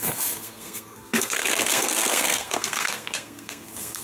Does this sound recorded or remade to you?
remade